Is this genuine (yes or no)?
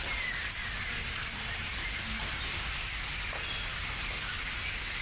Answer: yes